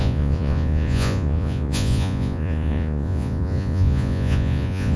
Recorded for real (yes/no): no